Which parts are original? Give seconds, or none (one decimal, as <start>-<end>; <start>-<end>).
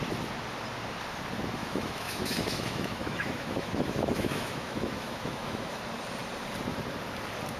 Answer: 0.0-1.6; 5.8-7.6